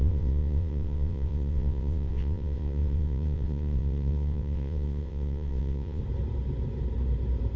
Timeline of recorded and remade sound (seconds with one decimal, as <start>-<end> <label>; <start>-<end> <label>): 0.0-6.0 remade; 6.0-7.6 recorded